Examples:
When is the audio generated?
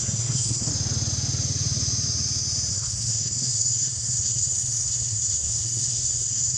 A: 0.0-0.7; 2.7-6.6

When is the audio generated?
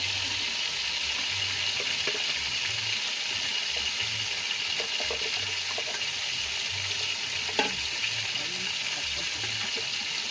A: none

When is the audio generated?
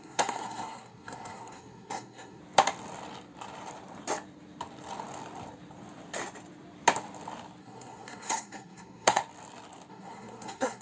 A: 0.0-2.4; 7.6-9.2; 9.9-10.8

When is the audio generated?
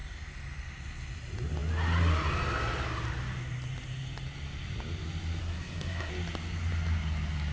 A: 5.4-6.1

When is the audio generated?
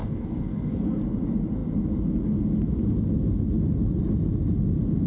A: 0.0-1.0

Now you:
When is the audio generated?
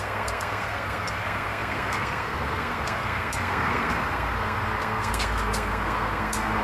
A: 0.0-6.6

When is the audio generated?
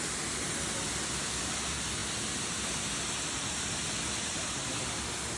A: none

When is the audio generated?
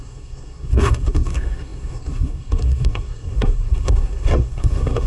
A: 0.0-5.1